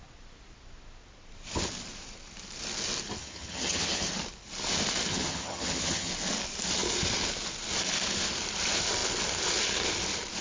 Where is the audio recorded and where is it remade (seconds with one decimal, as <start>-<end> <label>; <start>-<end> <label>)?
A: 0.0-3.2 recorded; 3.2-4.1 remade; 4.1-5.1 recorded; 5.1-6.1 remade; 6.1-10.4 recorded